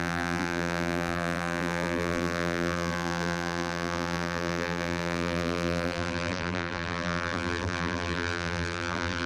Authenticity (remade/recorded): remade